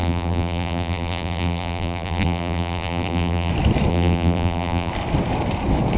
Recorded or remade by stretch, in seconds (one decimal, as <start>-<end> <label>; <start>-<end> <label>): 0.0-3.5 remade; 3.5-3.9 recorded; 3.9-4.9 remade; 4.9-6.0 recorded